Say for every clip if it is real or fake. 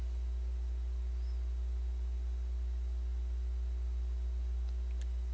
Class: real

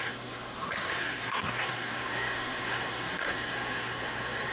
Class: fake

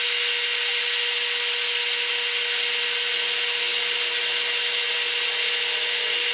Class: real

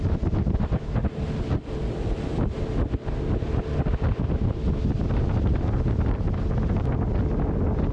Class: real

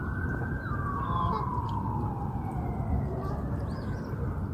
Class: real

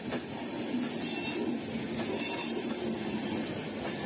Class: real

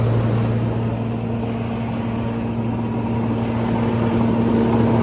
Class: real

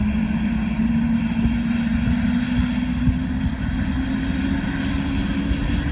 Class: real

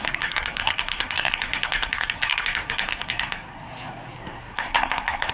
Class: fake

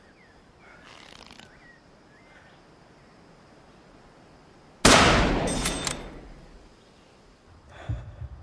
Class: real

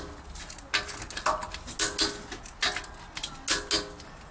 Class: real